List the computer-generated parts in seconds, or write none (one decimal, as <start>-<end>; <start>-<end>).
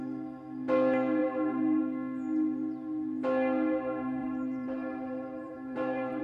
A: 1.2-1.8; 4.2-6.2